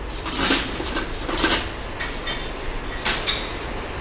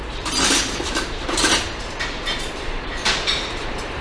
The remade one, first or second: second